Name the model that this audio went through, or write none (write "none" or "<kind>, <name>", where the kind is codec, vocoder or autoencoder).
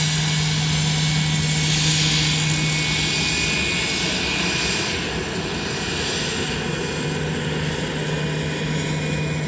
none